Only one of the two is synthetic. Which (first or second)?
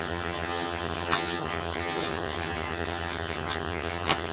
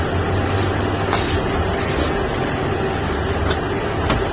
first